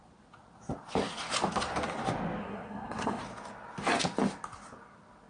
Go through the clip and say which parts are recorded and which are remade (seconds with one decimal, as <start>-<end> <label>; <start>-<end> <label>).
0.0-2.4 recorded; 2.4-3.2 remade; 3.2-5.3 recorded